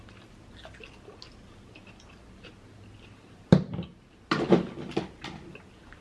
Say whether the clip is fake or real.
real